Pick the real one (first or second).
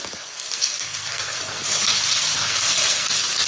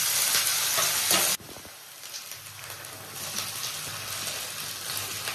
second